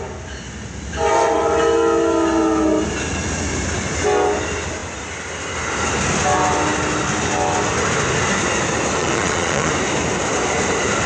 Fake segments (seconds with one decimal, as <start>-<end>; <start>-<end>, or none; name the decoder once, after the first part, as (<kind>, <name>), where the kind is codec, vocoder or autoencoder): 9.0-9.7 (vocoder, Vocos)